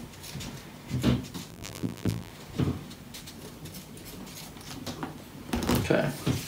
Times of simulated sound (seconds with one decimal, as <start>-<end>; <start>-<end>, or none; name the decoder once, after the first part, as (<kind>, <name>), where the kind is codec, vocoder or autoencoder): 1.5-2.3 (vocoder, BigVGAN v2)